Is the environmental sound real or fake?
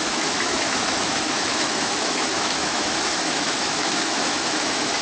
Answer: fake